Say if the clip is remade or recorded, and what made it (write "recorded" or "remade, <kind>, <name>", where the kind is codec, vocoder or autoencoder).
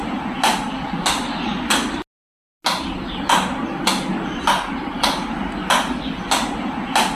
recorded